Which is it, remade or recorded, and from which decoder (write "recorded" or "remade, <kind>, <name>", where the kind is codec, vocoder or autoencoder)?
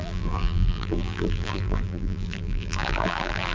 remade, vocoder, BigVGAN v2